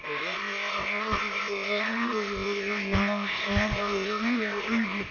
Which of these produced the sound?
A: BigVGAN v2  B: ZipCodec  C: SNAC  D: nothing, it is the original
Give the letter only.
B